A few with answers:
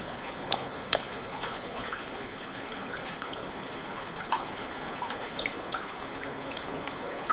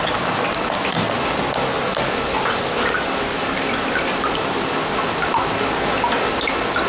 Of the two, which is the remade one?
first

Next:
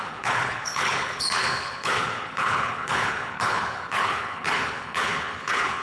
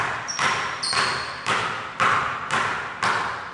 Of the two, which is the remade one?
first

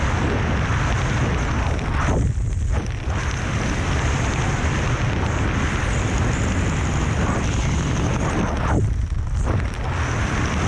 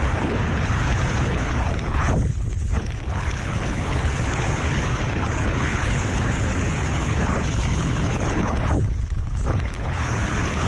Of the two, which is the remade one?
second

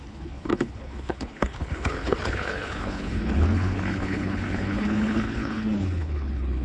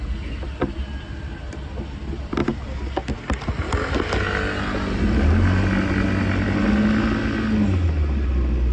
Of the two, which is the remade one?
first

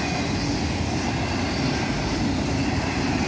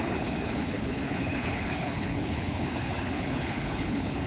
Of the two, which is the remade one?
second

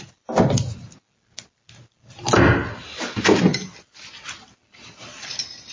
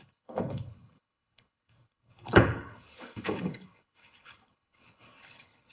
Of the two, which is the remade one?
second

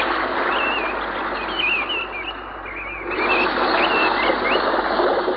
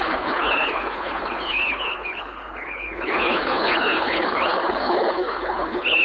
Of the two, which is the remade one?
second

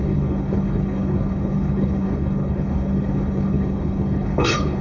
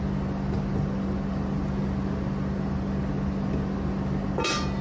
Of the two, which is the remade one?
first